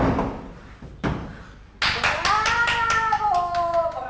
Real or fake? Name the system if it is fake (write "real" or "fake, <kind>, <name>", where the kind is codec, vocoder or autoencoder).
real